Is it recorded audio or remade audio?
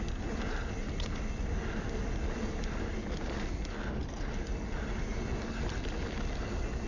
recorded